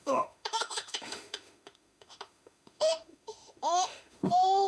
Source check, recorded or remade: remade